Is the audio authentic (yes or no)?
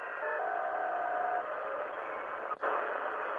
yes